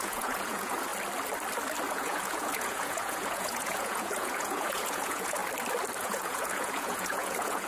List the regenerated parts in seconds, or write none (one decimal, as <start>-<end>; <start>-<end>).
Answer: 0.0-0.9; 1.9-5.4; 6.0-7.7